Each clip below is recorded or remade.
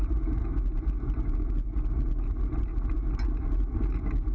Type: recorded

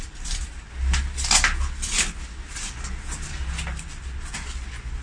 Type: recorded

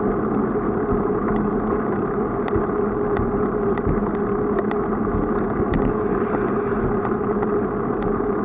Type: recorded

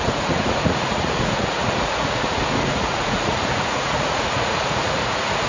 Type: remade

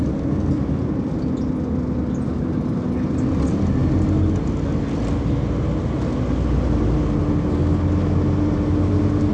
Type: recorded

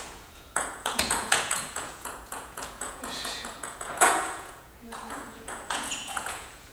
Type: remade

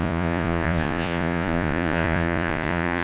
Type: remade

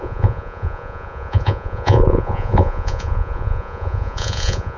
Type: remade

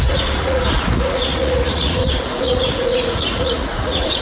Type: remade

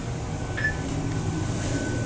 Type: recorded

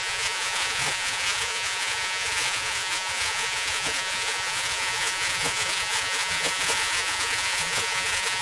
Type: remade